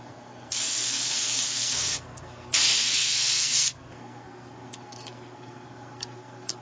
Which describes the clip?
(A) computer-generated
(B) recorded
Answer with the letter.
A